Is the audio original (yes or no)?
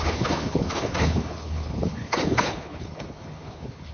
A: no